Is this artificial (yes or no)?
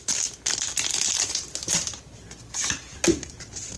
no